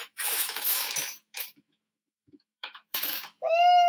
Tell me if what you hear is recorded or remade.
remade